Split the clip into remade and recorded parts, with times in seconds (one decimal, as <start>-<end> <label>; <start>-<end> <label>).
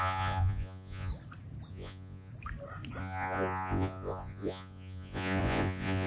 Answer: 0.0-1.1 remade; 1.1-1.7 recorded; 1.7-2.3 remade; 2.3-3.0 recorded; 3.0-6.1 remade